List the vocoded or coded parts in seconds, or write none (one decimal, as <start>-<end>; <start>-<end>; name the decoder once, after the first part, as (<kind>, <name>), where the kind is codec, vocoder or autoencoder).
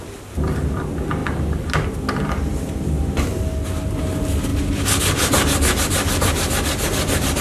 none